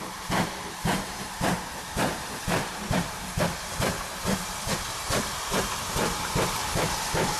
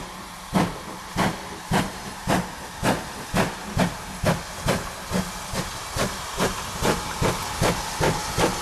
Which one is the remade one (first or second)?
first